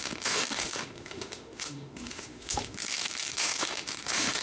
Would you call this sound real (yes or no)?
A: no